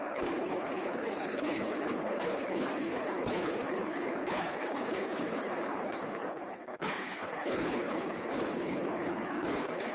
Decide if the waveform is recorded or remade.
remade